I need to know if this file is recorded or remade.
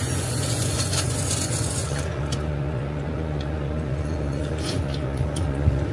remade